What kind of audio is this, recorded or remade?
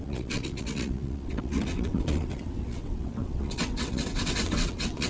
remade